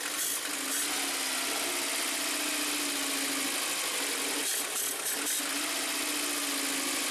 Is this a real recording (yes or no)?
yes